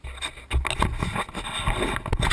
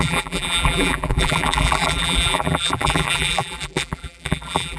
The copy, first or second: second